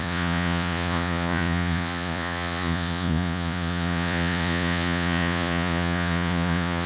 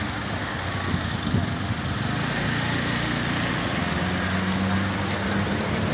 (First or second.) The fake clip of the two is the first